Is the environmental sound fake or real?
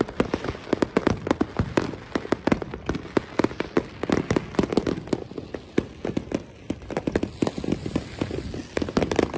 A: real